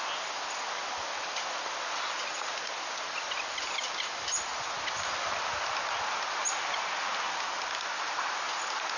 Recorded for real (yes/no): yes